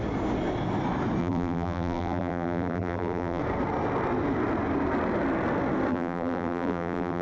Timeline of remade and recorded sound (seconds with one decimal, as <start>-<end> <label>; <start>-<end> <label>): 0.0-1.2 recorded; 1.2-3.4 remade; 3.4-5.9 recorded; 5.9-7.2 remade